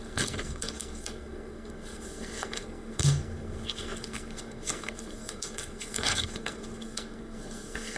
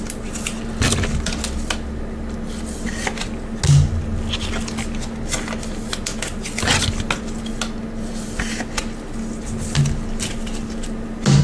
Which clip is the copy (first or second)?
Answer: first